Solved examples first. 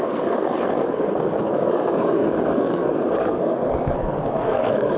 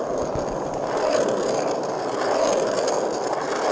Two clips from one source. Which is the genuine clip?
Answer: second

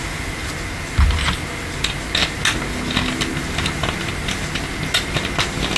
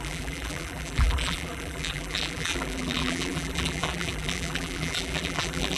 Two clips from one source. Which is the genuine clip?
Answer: first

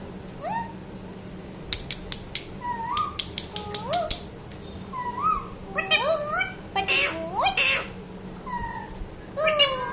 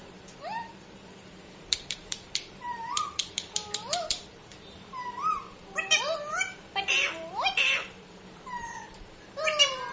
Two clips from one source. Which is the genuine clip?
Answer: first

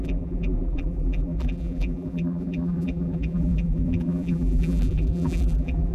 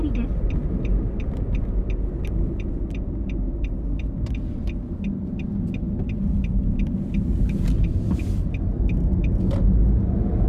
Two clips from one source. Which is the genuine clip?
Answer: second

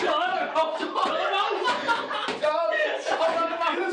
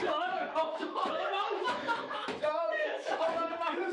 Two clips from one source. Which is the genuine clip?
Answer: first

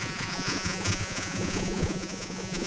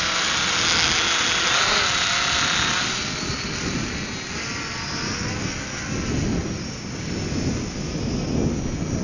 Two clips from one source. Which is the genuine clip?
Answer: second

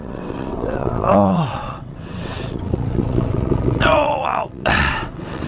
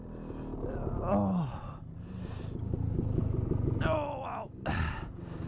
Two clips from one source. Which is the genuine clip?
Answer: second